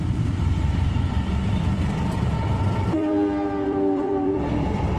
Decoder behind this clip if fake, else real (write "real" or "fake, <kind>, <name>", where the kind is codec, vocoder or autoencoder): fake, vocoder, BigVGAN v2